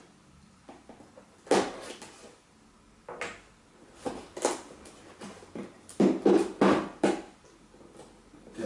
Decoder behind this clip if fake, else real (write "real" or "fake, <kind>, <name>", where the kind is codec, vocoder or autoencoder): real